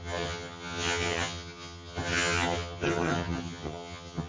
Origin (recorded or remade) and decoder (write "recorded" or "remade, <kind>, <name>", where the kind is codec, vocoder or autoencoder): remade, vocoder, HiFi-GAN